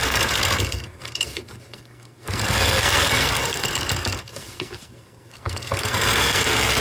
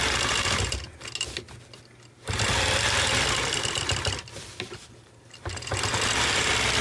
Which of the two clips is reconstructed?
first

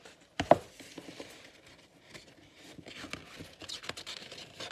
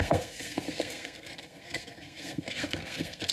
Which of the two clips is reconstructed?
second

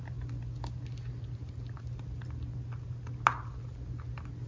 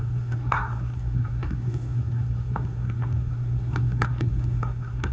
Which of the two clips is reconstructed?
second